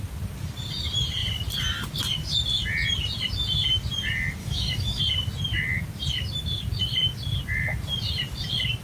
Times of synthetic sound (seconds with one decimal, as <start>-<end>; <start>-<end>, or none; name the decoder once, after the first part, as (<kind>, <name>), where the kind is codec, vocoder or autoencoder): 4.4-5.0 (autoencoder, DAC-VAE)